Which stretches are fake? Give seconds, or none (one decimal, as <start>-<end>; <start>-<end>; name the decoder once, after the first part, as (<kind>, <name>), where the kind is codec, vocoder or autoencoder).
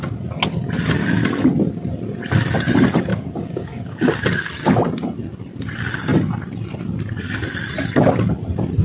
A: 3.1-4.1 (codec, DAC)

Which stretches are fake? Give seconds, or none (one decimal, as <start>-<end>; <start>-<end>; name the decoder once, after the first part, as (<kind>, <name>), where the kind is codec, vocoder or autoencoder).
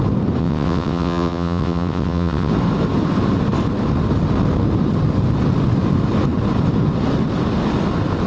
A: 0.4-2.5 (vocoder, WaveNeXt)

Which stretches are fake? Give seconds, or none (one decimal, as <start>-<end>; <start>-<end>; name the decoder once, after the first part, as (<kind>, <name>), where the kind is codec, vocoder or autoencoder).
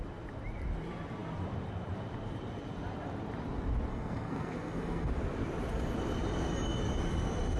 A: 3.9-5.1 (codec, SNAC)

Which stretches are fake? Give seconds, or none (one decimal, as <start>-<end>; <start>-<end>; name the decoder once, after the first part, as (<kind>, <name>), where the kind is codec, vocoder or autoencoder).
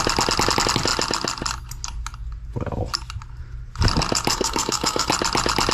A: 4.3-5.1 (codec, SNAC)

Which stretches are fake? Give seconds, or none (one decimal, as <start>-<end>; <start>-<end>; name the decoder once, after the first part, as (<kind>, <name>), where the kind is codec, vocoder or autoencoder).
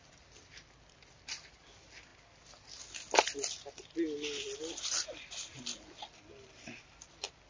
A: none